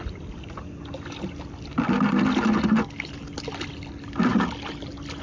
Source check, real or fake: real